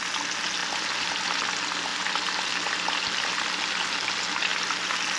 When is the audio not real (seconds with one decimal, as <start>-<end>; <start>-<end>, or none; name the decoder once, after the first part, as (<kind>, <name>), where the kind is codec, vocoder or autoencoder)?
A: none